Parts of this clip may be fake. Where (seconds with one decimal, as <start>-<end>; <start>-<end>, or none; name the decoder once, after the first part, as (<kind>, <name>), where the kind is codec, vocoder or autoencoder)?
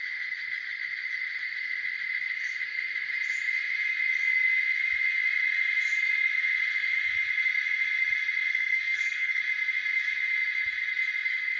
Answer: 8.5-9.4 (codec, SNAC)